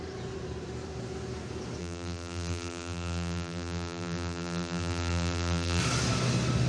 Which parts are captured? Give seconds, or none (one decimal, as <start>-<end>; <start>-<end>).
0.0-1.8; 5.8-6.7